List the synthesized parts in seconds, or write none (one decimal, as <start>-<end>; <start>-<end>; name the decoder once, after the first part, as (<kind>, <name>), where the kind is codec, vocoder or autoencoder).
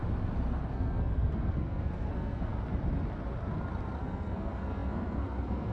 0.7-2.5 (codec, SNAC); 4.0-5.7